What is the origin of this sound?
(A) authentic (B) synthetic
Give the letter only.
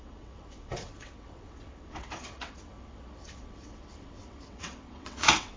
B